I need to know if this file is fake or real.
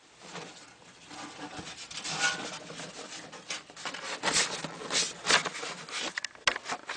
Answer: real